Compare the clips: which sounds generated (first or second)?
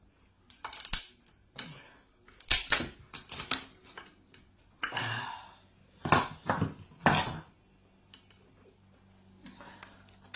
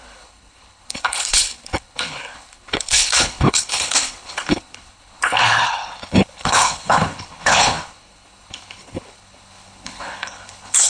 second